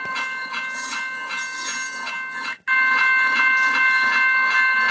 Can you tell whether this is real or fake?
real